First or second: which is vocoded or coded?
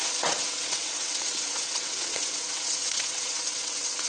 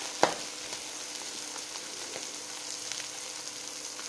first